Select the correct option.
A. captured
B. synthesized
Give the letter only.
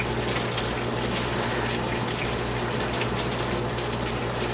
A